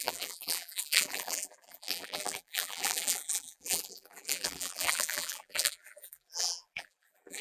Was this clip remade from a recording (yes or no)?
yes